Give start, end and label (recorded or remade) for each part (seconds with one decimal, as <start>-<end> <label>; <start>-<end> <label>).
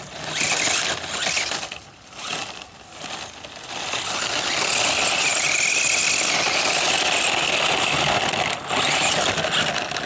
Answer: 0.0-10.1 recorded